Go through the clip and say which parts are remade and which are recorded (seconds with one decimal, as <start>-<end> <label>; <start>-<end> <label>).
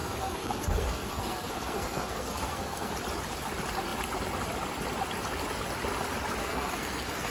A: 0.0-2.9 remade; 2.9-6.4 recorded; 6.4-7.3 remade